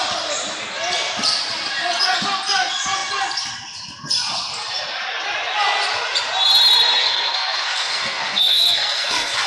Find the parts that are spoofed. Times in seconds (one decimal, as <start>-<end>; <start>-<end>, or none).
7.0-9.5